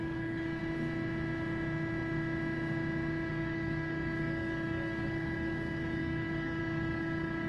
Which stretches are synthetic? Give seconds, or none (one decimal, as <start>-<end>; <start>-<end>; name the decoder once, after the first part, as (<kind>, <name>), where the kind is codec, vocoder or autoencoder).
0.0-0.6 (codec, DAC); 3.3-7.5